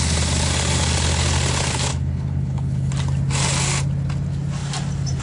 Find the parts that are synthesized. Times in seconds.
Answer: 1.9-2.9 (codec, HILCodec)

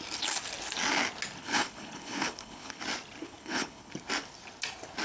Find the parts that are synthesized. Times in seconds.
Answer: 1.4-2.8 (codec, HILCodec); 3.2-3.9